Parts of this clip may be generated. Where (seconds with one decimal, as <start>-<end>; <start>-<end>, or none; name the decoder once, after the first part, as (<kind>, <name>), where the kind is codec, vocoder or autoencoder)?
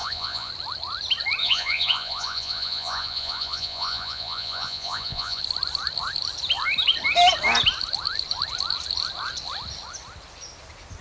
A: 0.0-0.5 (vocoder, Vocos); 1.4-5.4